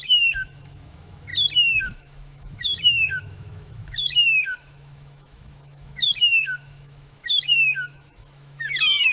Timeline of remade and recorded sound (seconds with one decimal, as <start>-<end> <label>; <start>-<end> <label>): 0.0-1.3 remade; 1.3-1.8 recorded; 1.8-9.1 remade